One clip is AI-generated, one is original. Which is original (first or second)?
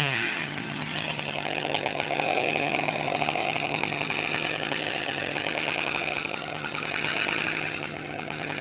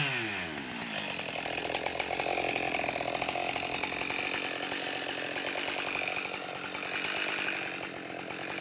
second